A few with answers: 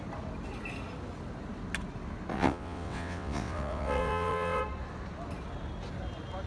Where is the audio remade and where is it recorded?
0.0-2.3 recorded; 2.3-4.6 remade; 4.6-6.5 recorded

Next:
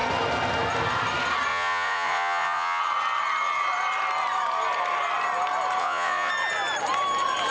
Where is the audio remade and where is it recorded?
0.0-1.5 recorded; 1.5-2.8 remade; 2.8-5.8 recorded; 5.8-6.3 remade; 6.3-7.5 recorded

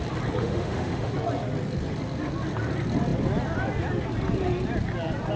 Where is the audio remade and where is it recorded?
0.0-0.4 recorded; 0.4-1.1 remade; 1.1-5.4 recorded

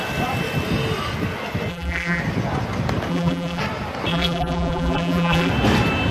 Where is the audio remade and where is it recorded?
0.0-1.7 recorded; 1.7-2.2 remade; 2.2-3.1 recorded; 3.1-3.6 remade; 3.6-4.1 recorded; 4.1-5.5 remade; 5.5-6.1 recorded

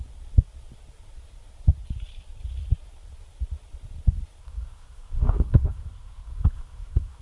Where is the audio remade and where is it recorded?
0.0-4.4 recorded; 4.4-7.2 remade

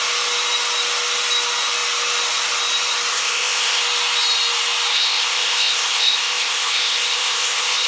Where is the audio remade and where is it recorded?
0.0-3.1 recorded; 3.1-3.8 remade; 3.8-4.9 recorded; 4.9-7.9 remade